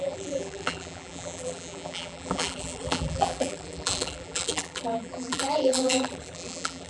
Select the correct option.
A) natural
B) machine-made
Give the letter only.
B